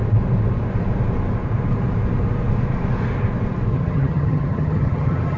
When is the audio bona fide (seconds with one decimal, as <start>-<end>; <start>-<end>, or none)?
0.0-3.7